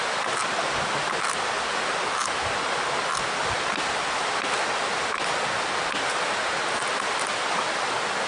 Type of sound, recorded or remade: recorded